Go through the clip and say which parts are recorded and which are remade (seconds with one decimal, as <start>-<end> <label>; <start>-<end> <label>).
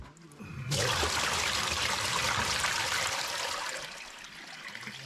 0.0-5.1 recorded